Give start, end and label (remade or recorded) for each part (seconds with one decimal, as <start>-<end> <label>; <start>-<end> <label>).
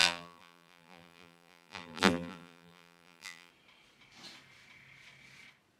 0.0-3.5 remade; 3.5-5.8 recorded